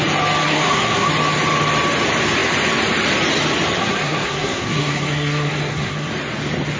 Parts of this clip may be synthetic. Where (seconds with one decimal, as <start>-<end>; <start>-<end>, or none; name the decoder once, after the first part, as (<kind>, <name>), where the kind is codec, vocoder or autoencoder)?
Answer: 0.4-1.1 (codec, SNAC); 3.8-6.1